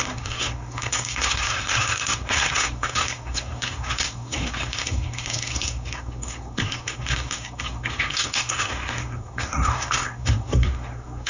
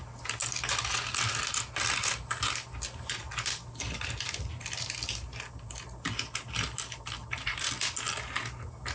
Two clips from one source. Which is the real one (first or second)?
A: second